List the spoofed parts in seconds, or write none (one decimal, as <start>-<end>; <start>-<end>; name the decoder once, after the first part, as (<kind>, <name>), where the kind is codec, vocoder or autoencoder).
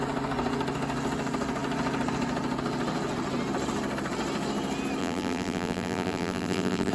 5.0-6.9 (vocoder, BigVGAN v2)